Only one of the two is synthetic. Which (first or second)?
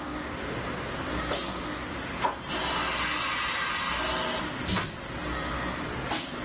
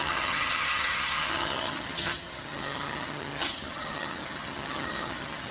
second